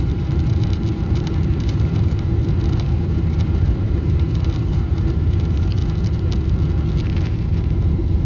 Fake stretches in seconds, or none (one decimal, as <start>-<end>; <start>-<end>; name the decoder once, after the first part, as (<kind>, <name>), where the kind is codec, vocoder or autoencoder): 0.0-5.8 (vocoder, BigVGAN v2); 7.0-8.2